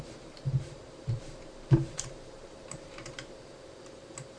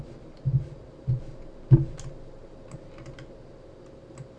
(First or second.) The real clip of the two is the second